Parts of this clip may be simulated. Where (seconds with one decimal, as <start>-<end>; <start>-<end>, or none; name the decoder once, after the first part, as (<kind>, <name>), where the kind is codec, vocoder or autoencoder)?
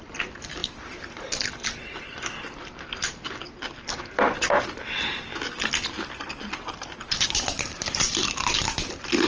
0.0-5.3 (vocoder, BigVGAN v2); 7.4-9.3